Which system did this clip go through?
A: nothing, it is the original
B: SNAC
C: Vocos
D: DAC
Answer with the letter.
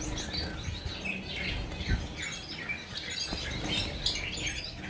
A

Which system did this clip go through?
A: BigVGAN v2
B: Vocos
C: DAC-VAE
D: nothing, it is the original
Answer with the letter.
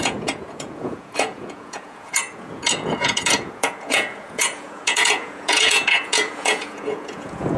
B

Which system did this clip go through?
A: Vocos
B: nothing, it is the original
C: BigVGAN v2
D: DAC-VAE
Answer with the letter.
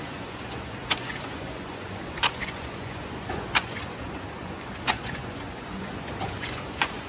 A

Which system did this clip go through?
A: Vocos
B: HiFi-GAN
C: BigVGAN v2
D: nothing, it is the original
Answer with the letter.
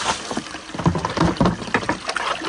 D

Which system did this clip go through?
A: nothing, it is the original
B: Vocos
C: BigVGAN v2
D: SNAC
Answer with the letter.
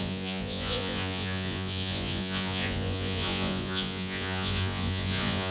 B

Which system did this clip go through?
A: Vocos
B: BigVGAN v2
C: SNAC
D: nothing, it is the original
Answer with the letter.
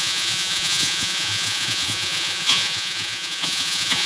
A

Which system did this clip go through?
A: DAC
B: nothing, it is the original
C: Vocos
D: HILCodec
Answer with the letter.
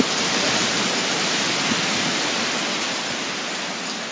B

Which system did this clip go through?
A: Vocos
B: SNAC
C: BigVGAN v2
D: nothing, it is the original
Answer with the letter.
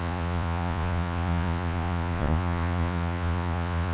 A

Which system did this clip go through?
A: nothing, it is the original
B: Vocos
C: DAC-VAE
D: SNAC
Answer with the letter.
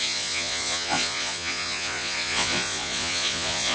B